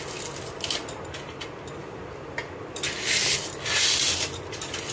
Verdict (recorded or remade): recorded